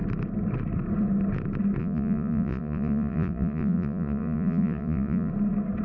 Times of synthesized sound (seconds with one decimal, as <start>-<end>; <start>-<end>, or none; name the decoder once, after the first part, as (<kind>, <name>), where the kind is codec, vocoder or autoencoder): 1.8-5.3 (vocoder, Vocos)